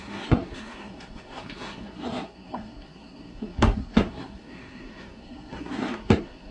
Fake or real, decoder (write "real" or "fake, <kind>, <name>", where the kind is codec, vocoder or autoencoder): fake, codec, SNAC